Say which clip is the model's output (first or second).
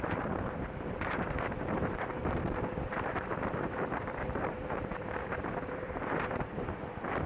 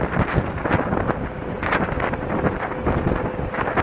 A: first